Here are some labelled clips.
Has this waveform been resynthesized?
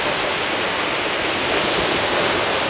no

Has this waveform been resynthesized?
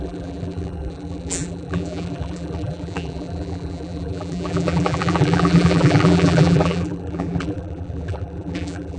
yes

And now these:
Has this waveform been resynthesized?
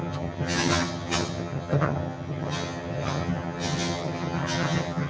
yes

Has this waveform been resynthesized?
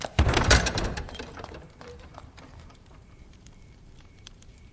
yes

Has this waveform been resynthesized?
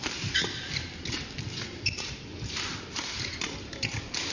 no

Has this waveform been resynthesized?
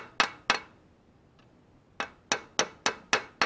no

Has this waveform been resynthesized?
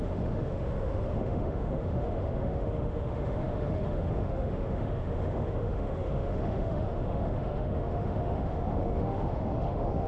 yes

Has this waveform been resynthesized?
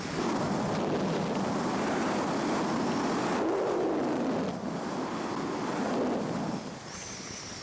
no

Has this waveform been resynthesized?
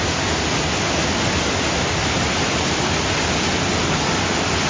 no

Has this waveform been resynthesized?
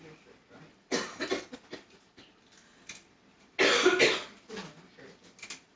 no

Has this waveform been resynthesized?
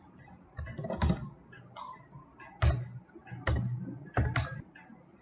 no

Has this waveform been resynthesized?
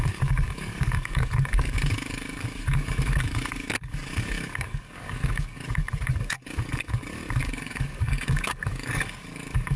yes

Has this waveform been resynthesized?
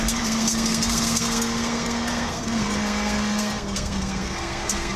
yes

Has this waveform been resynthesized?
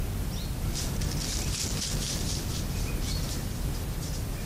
no